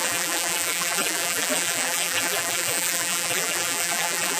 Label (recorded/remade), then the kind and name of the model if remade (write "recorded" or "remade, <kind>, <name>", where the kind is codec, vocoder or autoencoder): remade, vocoder, BigVGAN v2